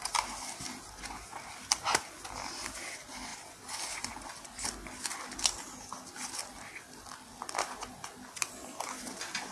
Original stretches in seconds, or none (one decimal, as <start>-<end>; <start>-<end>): 0.0-9.5